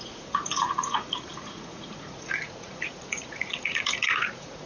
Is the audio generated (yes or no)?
yes